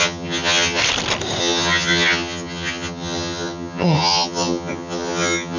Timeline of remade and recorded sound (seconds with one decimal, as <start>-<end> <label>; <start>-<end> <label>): 0.0-0.8 remade; 0.8-1.4 recorded; 1.4-5.6 remade